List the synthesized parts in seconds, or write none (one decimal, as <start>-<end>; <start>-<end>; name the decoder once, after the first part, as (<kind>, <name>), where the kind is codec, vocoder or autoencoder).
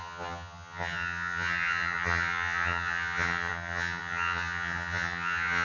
0.0-5.6 (vocoder, HiFi-GAN)